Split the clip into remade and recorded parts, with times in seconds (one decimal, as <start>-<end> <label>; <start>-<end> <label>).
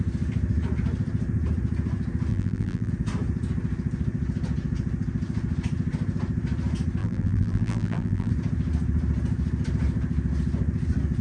0.0-2.3 recorded; 2.3-2.9 remade; 2.9-7.0 recorded; 7.0-8.3 remade; 8.3-11.2 recorded